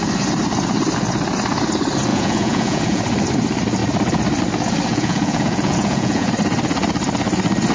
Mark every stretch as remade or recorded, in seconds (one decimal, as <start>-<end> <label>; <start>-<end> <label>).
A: 0.0-2.1 recorded; 2.1-3.0 remade; 3.0-4.9 recorded; 4.9-6.3 remade; 6.3-7.7 recorded